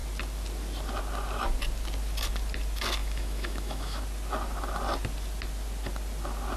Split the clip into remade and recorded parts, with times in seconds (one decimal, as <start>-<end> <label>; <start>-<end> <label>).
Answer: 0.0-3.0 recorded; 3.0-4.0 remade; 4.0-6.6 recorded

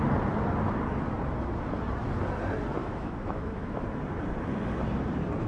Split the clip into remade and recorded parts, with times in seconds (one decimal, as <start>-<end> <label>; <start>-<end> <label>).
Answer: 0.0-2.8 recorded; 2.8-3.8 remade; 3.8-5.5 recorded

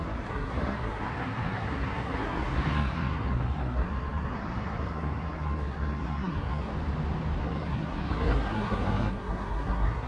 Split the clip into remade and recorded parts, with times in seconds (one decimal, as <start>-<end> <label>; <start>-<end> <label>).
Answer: 0.0-6.7 remade; 6.7-7.4 recorded; 7.4-10.1 remade

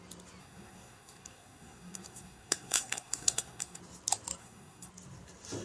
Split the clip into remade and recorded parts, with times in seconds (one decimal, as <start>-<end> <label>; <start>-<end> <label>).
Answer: 0.0-0.4 recorded; 0.4-3.8 remade; 3.8-4.4 recorded; 4.4-4.9 remade; 4.9-5.6 recorded